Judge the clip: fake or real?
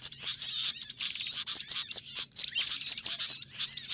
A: fake